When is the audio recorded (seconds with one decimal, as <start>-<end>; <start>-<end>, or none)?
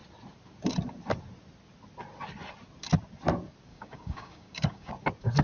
0.0-3.7; 4.9-5.4